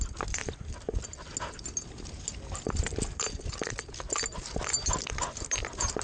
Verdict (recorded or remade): recorded